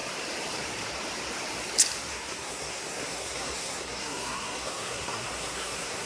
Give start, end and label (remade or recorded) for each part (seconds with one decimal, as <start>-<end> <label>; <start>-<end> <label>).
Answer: 0.0-2.1 recorded; 2.1-6.1 remade